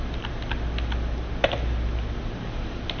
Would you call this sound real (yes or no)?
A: yes